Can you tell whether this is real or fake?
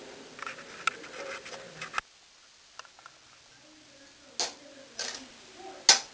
real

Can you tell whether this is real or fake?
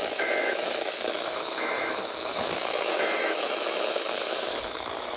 fake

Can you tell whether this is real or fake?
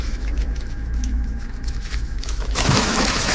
fake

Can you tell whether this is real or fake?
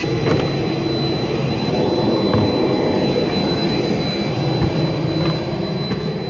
real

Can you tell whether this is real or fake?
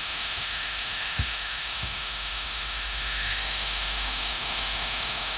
fake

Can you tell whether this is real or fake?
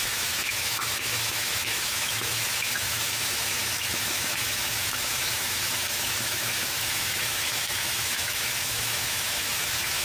fake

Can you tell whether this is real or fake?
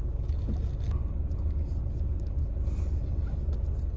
real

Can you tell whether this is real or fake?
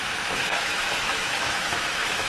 fake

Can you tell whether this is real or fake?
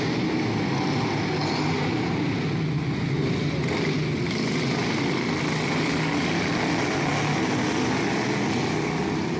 real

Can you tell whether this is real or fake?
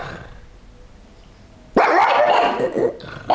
real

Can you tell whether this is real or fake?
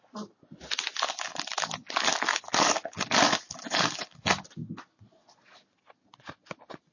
real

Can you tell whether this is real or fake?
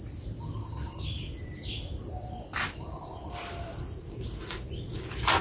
real